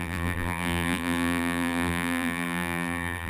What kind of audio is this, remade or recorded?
remade